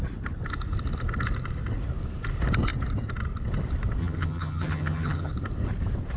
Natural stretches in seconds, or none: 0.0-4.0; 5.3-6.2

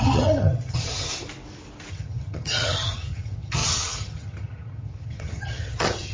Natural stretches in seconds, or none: 1.1-1.9

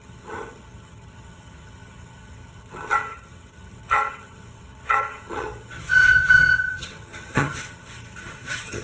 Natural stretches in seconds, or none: none